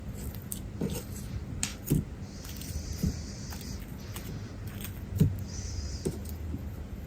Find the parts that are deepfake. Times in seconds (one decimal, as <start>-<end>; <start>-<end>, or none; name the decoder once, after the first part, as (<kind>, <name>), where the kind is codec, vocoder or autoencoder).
none